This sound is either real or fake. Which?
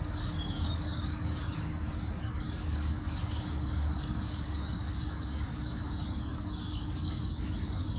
fake